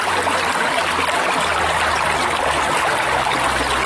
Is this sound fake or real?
real